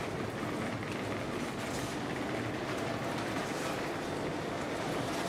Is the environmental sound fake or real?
real